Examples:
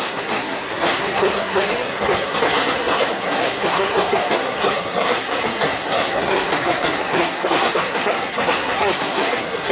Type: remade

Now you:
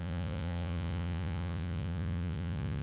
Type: remade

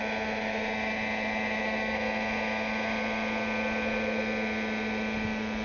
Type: recorded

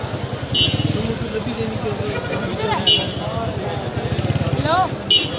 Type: recorded